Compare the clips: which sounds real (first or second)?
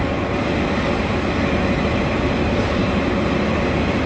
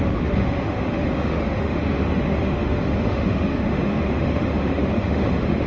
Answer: first